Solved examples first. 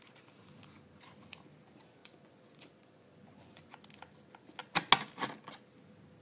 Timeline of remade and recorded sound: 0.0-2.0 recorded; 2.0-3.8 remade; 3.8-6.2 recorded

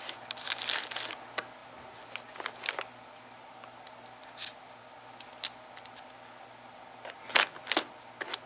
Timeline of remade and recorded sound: 0.0-8.5 recorded

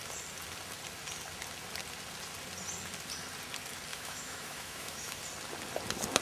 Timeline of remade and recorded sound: 0.0-3.9 recorded; 3.9-5.2 remade; 5.2-6.2 recorded

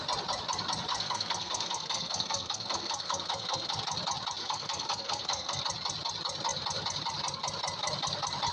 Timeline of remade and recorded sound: 0.0-0.9 recorded; 0.9-3.8 remade; 3.8-4.4 recorded; 4.4-5.6 remade; 5.6-8.5 recorded